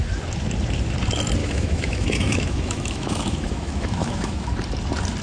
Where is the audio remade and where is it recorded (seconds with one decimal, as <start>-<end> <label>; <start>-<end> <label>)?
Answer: 0.0-1.4 recorded; 1.4-4.5 remade; 4.5-5.2 recorded